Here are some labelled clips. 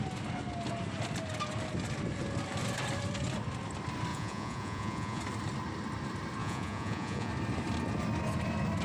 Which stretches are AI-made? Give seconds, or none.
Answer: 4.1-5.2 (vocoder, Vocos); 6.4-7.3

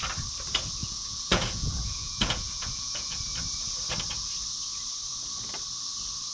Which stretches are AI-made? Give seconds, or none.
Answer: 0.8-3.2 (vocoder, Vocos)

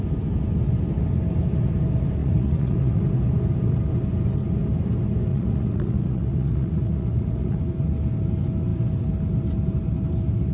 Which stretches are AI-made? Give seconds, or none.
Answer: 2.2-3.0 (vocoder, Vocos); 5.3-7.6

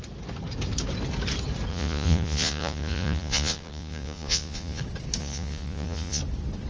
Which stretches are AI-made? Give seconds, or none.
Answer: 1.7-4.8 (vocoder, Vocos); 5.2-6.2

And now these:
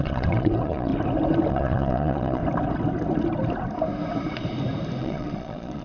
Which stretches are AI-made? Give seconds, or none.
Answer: 0.0-0.9 (vocoder, Vocos); 1.5-2.4; 5.0-5.8

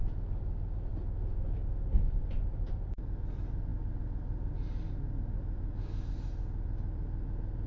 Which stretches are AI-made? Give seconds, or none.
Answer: none